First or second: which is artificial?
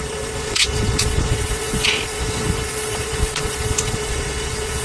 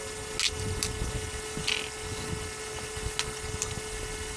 first